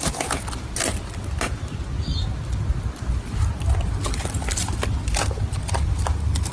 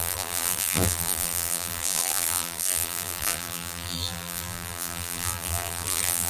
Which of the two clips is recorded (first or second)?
first